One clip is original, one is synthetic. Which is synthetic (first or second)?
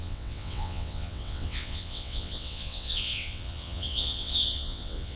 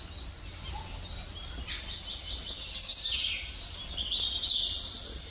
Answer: first